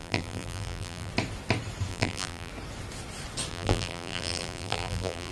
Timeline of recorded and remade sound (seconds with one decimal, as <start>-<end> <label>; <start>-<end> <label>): 0.0-1.1 remade; 1.1-1.9 recorded; 1.9-2.5 remade; 2.5-3.5 recorded; 3.5-5.3 remade